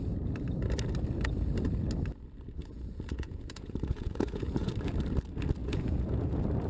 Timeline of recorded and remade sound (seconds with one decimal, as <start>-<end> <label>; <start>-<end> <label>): 0.0-2.6 recorded; 2.6-4.7 remade; 4.7-5.6 recorded; 5.6-6.3 remade; 6.3-6.7 recorded